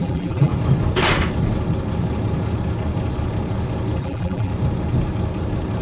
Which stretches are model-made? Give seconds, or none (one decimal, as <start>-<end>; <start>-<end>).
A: 0.0-0.5; 4.0-4.5